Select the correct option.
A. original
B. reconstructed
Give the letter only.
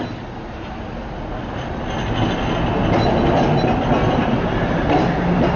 A